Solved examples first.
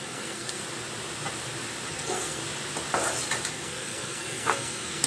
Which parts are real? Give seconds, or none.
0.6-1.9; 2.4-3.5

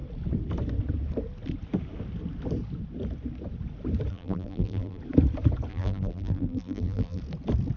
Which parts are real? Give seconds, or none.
0.0-4.1; 5.0-5.7; 7.2-7.8